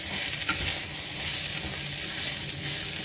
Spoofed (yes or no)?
no